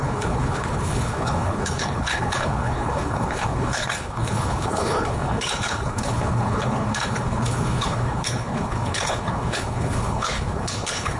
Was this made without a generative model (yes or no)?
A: no